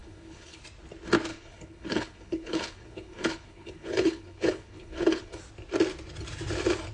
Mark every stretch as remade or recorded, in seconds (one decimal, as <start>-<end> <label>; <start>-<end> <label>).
0.0-0.6 remade; 0.6-1.3 recorded; 1.3-5.4 remade; 5.4-6.9 recorded